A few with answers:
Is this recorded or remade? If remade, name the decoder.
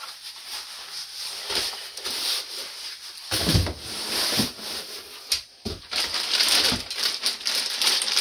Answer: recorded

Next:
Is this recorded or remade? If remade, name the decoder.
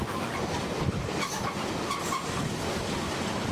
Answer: recorded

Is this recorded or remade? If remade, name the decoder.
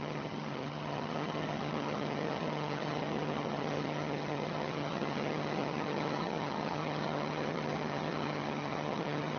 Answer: remade, vocoder, HiFi-GAN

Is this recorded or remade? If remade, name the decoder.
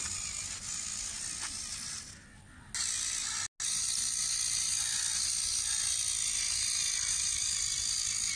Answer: recorded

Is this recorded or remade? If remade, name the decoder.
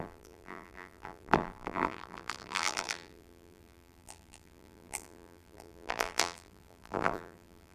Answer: remade, vocoder, BigVGAN v2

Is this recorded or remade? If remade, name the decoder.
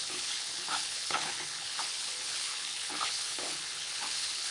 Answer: remade, codec, HILCodec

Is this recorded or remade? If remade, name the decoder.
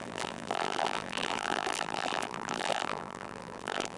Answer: remade, vocoder, BigVGAN v2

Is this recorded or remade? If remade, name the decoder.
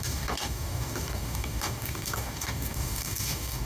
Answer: remade, codec, DAC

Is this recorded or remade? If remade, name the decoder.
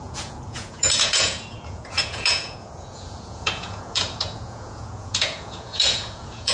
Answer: remade, vocoder, Vocos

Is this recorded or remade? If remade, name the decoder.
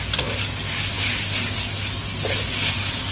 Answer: recorded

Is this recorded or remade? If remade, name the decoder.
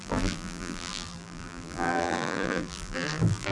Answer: remade, vocoder, BigVGAN v2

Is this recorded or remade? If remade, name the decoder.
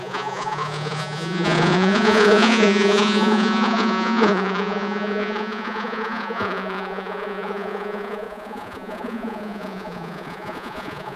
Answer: remade, vocoder, Vocos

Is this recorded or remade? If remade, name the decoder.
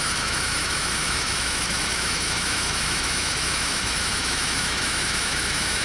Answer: remade, autoencoder, DAC-VAE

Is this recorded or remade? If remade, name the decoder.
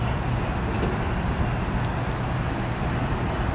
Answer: recorded